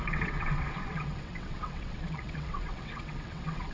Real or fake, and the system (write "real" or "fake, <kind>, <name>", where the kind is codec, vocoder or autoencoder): fake, vocoder, WaveNeXt